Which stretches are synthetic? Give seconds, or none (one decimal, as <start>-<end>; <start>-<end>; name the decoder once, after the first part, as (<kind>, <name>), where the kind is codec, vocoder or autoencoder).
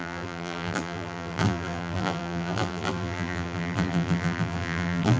0.0-5.2 (vocoder, BigVGAN v2)